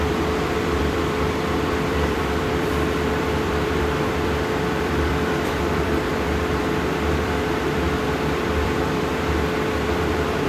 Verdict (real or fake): fake